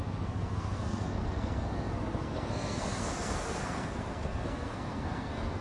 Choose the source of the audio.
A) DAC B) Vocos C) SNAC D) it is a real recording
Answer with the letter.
C